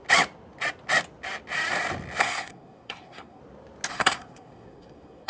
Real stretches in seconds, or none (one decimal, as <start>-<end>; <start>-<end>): 0.0-2.2; 3.4-3.9